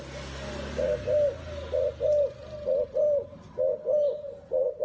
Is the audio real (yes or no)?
yes